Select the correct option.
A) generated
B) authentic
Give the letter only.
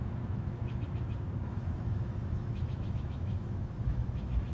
A